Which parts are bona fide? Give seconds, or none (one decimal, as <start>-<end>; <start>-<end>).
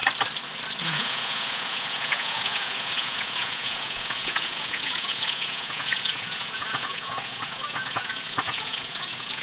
0.0-0.8